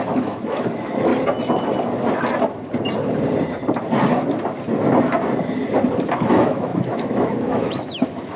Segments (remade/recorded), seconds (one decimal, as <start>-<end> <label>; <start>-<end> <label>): 0.0-1.1 remade; 1.1-6.1 recorded; 6.1-8.4 remade